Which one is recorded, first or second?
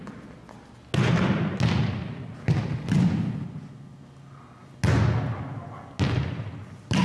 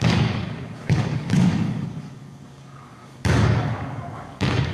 first